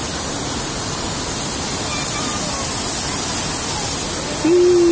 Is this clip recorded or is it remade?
recorded